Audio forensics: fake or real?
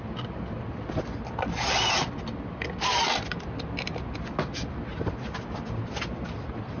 real